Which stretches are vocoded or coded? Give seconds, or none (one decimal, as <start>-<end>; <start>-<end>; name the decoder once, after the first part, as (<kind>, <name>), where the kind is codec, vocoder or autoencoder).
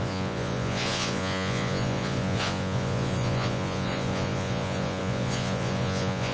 0.0-6.3 (vocoder, Vocos)